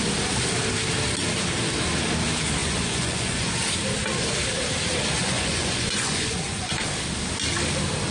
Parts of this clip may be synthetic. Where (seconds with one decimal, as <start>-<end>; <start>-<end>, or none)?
2.6-3.5; 5.2-6.7